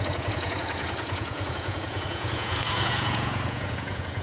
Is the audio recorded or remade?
remade